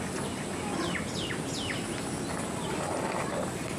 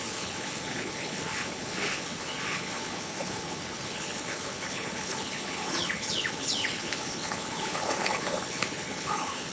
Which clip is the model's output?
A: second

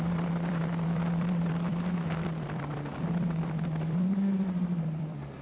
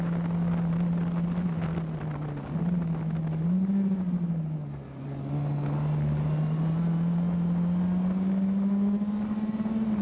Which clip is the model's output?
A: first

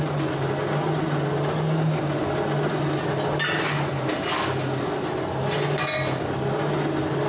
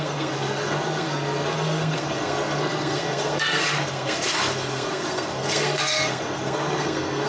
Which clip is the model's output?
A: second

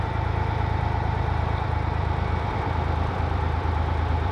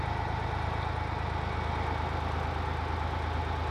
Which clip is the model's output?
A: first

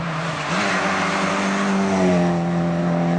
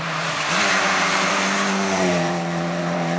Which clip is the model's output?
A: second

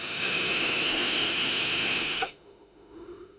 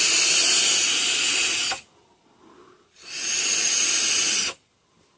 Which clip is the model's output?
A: first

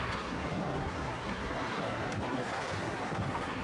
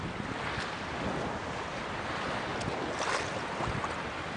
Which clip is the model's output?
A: first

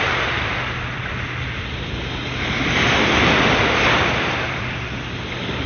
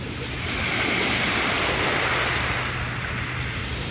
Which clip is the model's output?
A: first